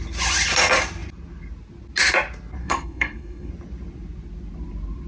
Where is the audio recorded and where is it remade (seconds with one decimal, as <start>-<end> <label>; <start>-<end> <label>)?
0.0-2.6 recorded; 2.6-3.5 remade; 3.5-5.1 recorded